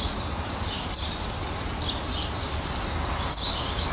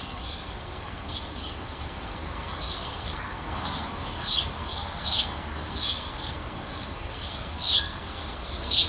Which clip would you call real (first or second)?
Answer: first